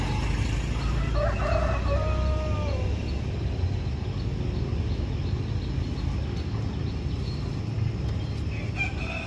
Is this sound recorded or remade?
recorded